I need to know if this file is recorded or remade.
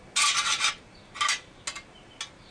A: recorded